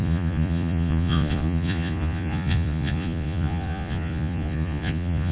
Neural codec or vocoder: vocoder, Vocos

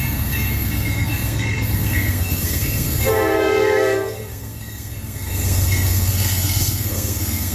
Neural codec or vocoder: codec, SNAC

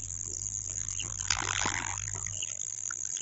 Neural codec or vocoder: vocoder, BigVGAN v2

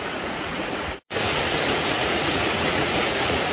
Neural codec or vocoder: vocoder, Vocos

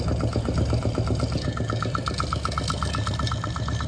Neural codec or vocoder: none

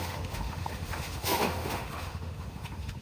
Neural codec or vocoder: autoencoder, DAC-VAE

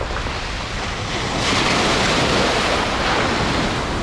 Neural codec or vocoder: none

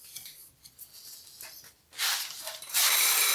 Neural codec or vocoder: vocoder, BigVGAN v2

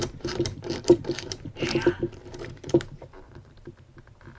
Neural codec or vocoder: vocoder, BigVGAN v2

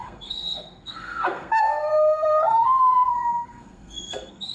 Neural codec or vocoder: codec, SNAC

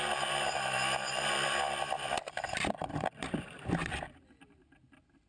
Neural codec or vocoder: vocoder, BigVGAN v2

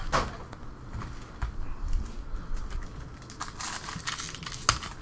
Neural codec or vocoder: none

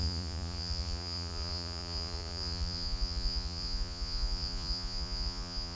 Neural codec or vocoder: vocoder, Vocos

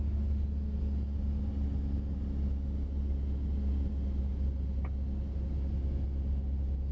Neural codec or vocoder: none